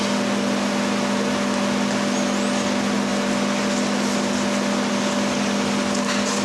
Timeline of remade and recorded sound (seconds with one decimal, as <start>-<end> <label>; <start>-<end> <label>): 0.0-6.4 recorded